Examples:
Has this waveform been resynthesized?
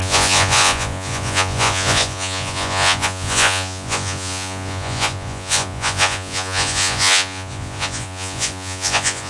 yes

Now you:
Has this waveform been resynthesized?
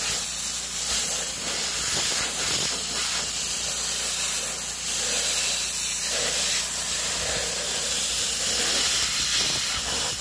no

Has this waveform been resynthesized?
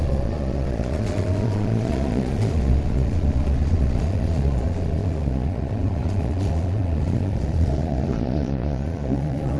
yes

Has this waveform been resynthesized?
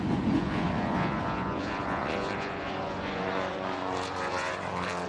yes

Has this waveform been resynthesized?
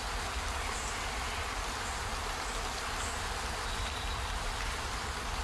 no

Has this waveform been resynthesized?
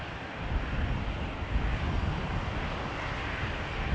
no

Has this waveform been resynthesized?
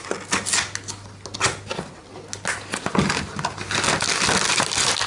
no